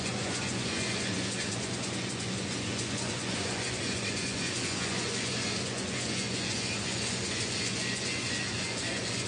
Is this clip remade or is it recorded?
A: remade